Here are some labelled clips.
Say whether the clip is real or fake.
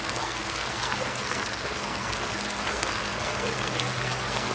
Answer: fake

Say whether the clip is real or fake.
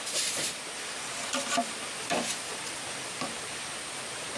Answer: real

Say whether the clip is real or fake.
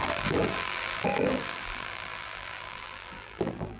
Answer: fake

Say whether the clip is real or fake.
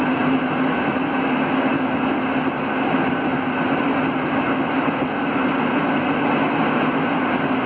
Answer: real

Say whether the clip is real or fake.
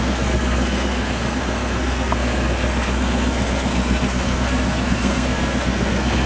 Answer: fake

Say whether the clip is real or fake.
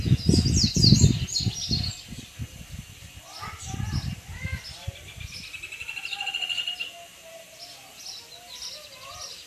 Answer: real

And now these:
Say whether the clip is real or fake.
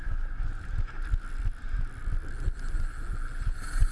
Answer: real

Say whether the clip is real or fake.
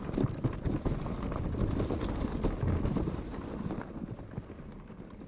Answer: real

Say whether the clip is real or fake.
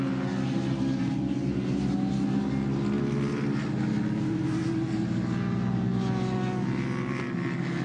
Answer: real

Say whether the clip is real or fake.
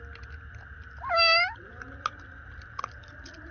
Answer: real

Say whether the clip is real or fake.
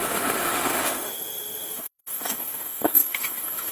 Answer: fake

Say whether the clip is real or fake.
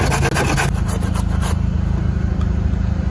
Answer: real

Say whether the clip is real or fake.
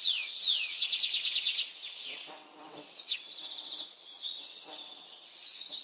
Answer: fake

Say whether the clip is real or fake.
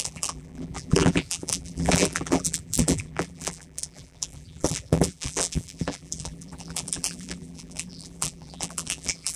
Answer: fake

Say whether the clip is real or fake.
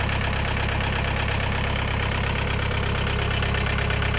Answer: real